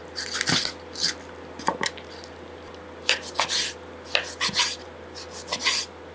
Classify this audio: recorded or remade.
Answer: recorded